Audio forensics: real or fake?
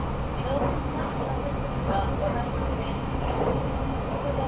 real